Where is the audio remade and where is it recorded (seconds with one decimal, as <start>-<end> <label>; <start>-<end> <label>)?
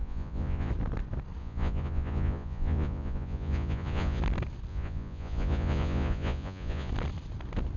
0.0-0.7 remade; 0.7-1.4 recorded; 1.4-4.2 remade; 4.2-4.7 recorded; 4.7-6.9 remade; 6.9-7.8 recorded